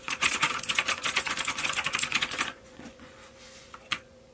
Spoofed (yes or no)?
yes